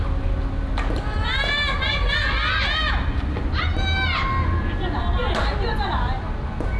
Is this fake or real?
real